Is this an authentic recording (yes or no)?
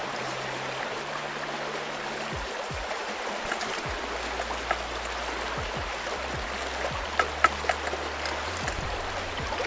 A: yes